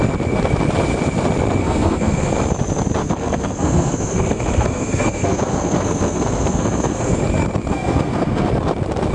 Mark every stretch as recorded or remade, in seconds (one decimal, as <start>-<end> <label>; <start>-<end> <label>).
0.0-1.6 recorded; 1.6-2.3 remade; 2.3-3.0 recorded; 3.0-7.2 remade; 7.2-7.7 recorded; 7.7-8.5 remade; 8.5-9.1 recorded

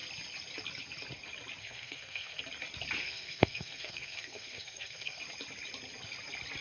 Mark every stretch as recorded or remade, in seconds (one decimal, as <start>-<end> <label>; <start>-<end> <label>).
0.0-1.6 recorded; 1.6-2.4 remade; 2.4-3.0 recorded; 3.0-5.2 remade; 5.2-6.6 recorded

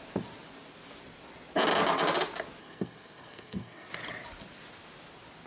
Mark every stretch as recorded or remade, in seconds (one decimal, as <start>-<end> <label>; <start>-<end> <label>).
0.0-2.6 recorded; 2.6-3.9 remade; 3.9-5.5 recorded

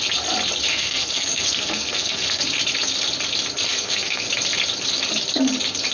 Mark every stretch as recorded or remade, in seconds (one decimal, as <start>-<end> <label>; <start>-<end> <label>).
0.0-0.7 recorded; 0.7-2.4 remade; 2.4-3.7 recorded; 3.7-4.3 remade; 4.3-5.9 recorded

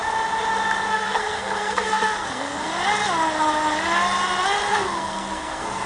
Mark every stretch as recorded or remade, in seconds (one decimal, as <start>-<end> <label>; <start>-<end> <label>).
0.0-0.9 recorded; 0.9-2.7 remade; 2.7-4.7 recorded; 4.7-5.9 remade